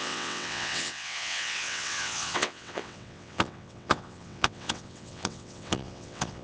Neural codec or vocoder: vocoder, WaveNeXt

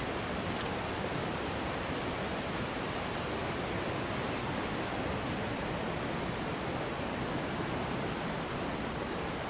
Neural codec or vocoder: none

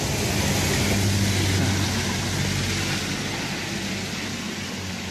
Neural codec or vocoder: none